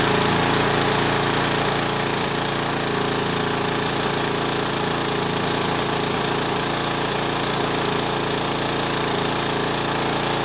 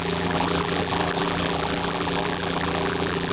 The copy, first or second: second